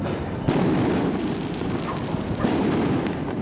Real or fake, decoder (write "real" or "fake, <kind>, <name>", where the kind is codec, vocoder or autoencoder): fake, vocoder, BigVGAN v2